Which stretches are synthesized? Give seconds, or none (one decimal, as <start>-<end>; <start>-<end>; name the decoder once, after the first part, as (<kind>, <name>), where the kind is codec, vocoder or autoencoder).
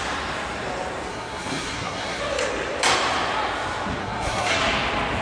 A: 1.1-2.2 (codec, SNAC); 4.0-4.6